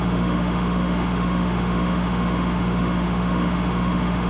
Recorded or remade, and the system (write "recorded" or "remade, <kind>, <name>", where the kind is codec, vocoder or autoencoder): remade, autoencoder, DAC-VAE